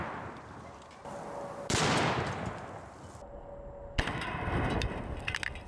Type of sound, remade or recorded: recorded